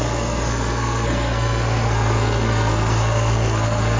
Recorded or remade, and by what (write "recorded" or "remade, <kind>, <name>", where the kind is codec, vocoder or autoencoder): remade, codec, SNAC